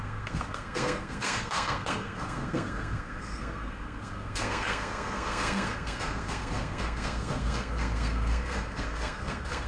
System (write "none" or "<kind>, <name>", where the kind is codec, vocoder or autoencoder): codec, SNAC